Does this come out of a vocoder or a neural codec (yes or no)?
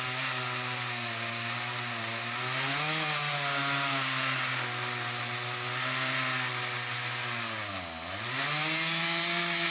no